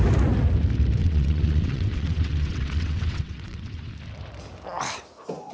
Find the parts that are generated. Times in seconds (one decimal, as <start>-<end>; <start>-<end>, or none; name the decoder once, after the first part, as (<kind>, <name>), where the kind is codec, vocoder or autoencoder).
1.0-3.9 (vocoder, WaveNeXt)